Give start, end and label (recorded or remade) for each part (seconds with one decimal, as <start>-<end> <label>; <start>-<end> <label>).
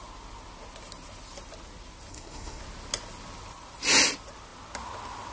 0.0-2.1 recorded; 2.1-2.6 remade; 2.6-5.3 recorded